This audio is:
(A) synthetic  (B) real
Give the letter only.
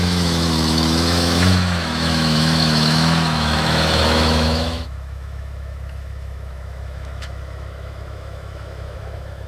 A